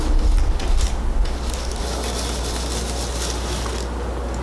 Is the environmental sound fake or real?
real